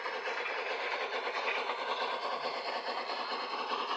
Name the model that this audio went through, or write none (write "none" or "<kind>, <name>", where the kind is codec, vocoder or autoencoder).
none